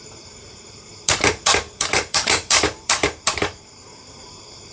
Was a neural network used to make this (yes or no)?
yes